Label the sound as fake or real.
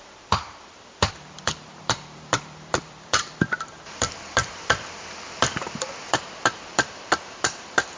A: fake